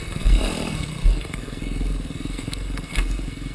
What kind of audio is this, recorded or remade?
remade